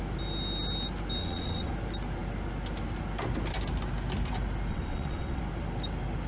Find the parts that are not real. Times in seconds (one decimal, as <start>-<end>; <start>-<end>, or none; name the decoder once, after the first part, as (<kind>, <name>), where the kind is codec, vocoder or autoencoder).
1.2-1.7 (vocoder, WaveNeXt); 4.7-5.4